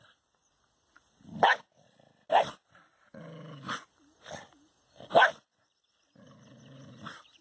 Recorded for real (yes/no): yes